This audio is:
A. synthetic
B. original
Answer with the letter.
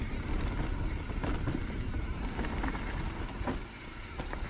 B